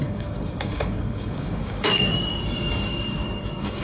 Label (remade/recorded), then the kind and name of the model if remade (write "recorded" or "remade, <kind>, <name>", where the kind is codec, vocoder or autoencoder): remade, codec, DAC